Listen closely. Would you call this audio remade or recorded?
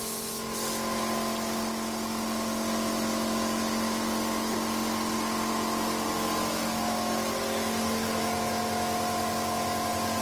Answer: recorded